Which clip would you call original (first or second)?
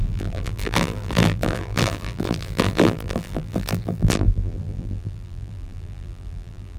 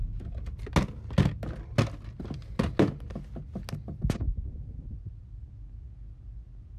second